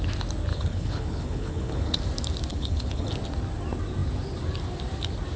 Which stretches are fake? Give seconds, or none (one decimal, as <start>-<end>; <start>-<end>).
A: 0.5-2.0; 2.5-3.1